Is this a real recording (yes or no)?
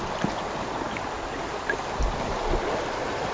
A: yes